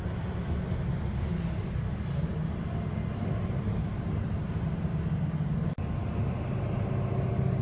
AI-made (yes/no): no